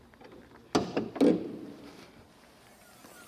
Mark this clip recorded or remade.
recorded